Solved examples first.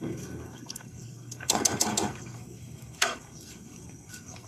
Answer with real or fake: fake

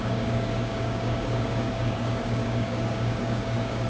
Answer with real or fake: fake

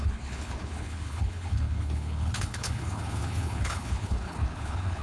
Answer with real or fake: fake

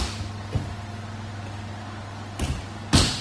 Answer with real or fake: real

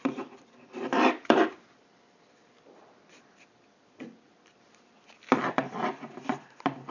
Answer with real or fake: fake